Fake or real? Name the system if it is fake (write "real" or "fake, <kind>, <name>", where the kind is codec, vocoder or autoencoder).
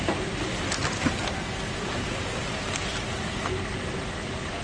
real